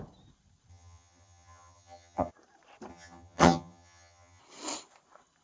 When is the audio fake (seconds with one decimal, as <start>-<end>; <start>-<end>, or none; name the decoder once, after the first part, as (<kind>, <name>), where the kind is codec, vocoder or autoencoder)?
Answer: 0.7-2.3 (vocoder, HiFi-GAN); 2.9-4.4